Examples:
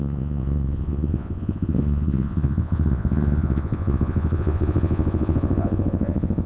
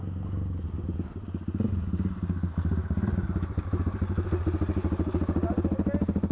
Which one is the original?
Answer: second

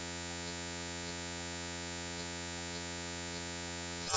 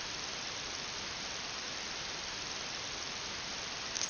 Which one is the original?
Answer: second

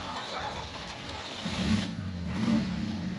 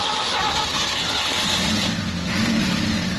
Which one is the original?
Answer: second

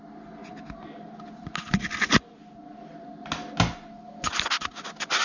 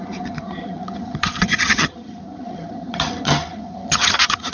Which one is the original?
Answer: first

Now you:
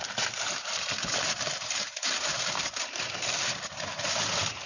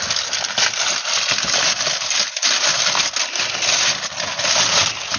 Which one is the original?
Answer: second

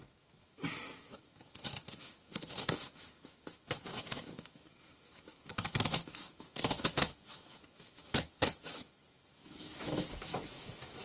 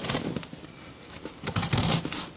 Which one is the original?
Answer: second